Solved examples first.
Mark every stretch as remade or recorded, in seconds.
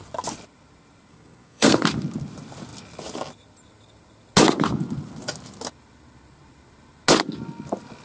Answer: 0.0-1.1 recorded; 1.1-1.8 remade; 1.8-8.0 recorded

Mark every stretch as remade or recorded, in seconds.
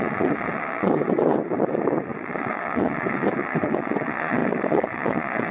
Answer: 0.0-5.5 remade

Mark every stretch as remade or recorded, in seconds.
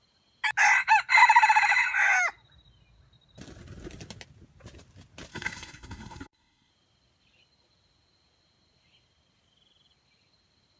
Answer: 0.0-5.3 recorded; 5.3-6.7 remade; 6.7-10.8 recorded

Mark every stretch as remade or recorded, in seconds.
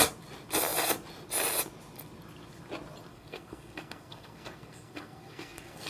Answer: 0.0-3.1 recorded; 3.1-5.9 remade